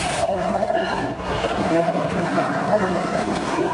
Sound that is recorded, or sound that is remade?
remade